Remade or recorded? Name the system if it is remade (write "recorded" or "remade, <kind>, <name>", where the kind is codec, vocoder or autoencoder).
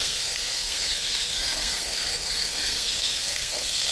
remade, codec, SNAC